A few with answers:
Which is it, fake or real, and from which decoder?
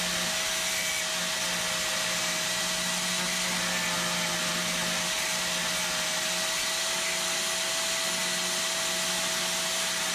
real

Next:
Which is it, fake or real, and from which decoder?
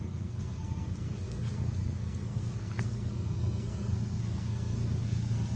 fake, codec, SNAC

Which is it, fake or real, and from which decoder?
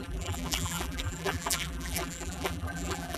fake, vocoder, BigVGAN v2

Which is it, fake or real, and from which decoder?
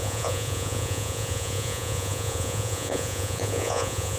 fake, vocoder, Vocos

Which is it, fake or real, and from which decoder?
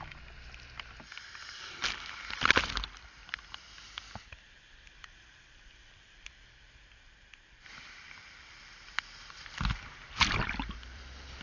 fake, vocoder, BigVGAN v2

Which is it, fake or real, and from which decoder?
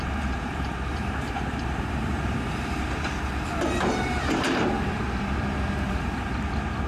fake, vocoder, BigVGAN v2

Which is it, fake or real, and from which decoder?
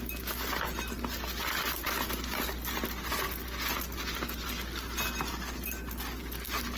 real